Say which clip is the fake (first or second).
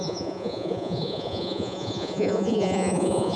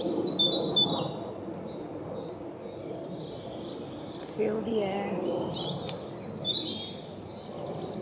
first